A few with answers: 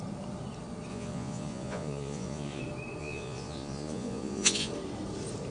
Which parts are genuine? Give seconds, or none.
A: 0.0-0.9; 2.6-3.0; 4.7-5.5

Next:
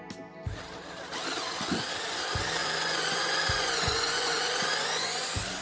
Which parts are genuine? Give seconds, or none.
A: 0.0-2.6

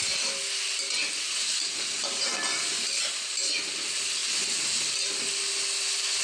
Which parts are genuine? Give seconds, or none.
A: 0.0-6.2

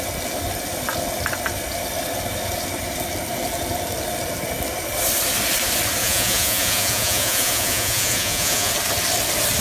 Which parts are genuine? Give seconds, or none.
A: 0.0-6.0; 8.7-9.6